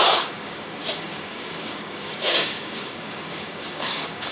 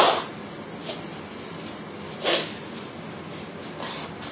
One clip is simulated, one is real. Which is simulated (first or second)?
first